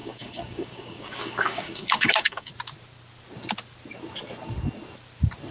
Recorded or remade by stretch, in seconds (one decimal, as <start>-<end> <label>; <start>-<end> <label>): 0.0-2.5 remade; 2.5-5.5 recorded